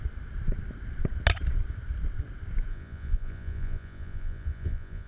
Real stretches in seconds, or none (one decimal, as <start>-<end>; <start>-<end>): 0.0-2.7